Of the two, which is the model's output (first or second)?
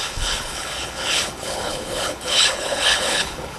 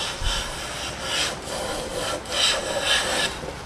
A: first